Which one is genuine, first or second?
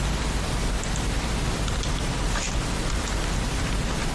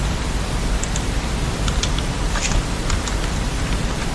first